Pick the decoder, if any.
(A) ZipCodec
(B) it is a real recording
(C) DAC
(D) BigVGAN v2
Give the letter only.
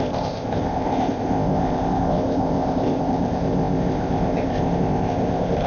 A